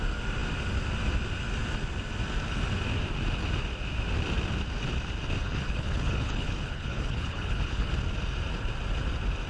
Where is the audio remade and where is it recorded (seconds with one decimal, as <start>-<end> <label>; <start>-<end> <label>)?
0.0-5.4 recorded; 5.4-7.9 remade; 7.9-9.5 recorded